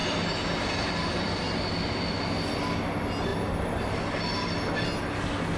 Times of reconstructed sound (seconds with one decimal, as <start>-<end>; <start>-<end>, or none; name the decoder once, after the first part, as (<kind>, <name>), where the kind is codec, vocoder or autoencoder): none